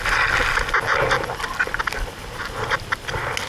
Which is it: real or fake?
real